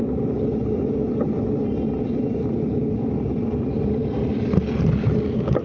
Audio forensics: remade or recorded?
recorded